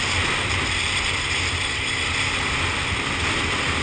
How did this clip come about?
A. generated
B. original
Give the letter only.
B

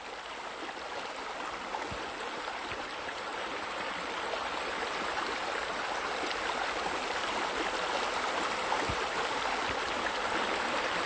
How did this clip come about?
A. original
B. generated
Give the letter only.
A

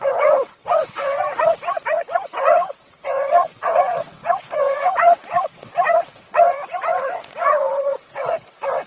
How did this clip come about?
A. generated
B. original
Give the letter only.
A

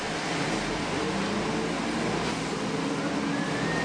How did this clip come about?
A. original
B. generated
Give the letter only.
A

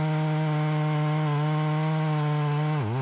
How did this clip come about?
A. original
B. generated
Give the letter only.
A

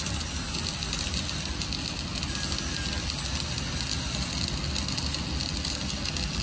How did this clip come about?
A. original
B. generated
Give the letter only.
A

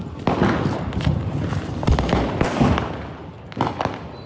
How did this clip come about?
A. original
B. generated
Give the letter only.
A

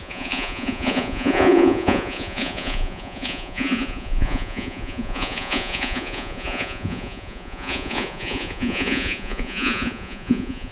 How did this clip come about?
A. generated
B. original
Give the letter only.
A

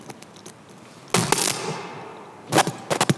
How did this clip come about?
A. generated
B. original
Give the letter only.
B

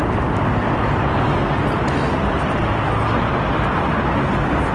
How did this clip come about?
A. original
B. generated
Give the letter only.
A